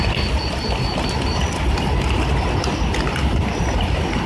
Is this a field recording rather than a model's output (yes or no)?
yes